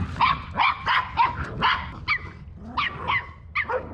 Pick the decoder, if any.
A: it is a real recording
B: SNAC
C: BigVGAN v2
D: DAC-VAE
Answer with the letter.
A